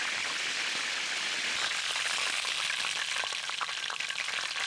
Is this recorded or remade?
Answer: recorded